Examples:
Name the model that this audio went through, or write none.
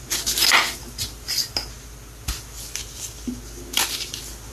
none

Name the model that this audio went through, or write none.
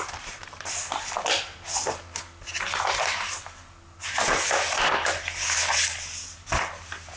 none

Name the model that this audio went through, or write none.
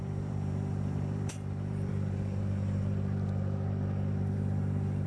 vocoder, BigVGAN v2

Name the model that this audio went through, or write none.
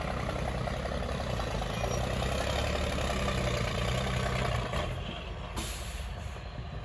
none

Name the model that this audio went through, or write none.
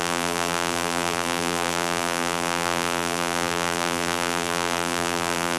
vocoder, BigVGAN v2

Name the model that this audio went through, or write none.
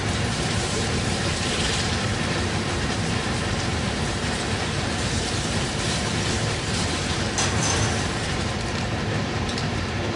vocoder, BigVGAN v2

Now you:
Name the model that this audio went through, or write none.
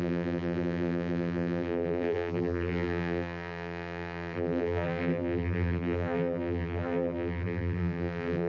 vocoder, BigVGAN v2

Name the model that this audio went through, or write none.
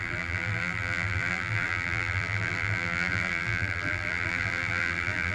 vocoder, BigVGAN v2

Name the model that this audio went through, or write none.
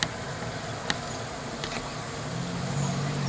none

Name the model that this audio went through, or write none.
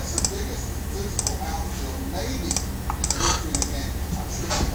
none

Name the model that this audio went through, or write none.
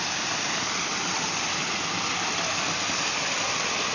vocoder, BigVGAN v2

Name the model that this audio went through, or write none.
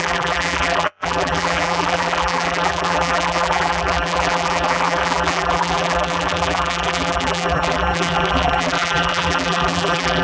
vocoder, BigVGAN v2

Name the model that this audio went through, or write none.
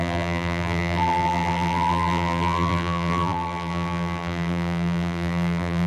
vocoder, BigVGAN v2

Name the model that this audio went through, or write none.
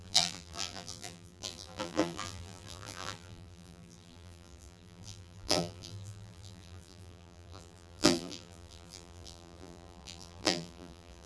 vocoder, BigVGAN v2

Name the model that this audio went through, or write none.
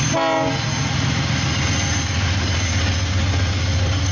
none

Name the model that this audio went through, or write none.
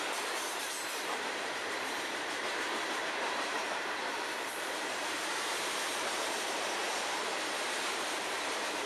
vocoder, BigVGAN v2